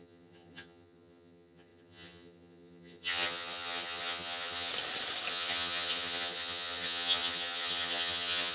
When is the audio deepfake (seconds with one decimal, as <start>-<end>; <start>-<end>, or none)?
0.0-4.7; 5.3-8.5